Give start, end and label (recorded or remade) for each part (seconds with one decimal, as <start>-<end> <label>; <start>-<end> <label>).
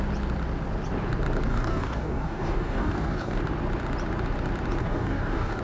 0.0-1.5 recorded; 1.5-3.4 remade; 3.4-4.8 recorded; 4.8-5.6 remade